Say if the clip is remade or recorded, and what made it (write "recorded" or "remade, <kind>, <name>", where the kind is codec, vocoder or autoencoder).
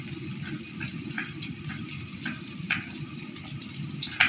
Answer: recorded